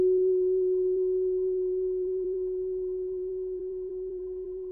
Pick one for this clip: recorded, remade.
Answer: remade